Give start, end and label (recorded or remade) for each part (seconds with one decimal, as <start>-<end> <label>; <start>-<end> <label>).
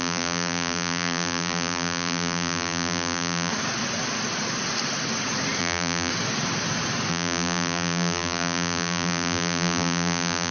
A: 0.0-3.5 remade; 3.5-5.6 recorded; 5.6-6.1 remade; 6.1-7.1 recorded; 7.1-10.5 remade